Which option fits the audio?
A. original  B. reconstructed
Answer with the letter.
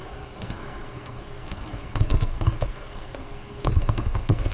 B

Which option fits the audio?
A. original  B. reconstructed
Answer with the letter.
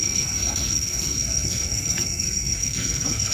B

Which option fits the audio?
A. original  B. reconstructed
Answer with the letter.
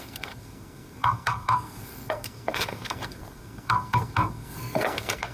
B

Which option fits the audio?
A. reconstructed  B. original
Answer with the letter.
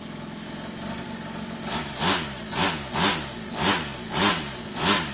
B